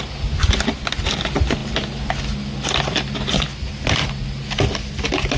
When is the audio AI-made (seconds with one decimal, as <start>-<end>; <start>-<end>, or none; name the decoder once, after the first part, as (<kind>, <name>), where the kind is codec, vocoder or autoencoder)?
none